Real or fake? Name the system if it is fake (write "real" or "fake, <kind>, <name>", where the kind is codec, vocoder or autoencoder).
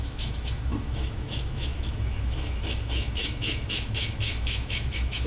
fake, autoencoder, DAC-VAE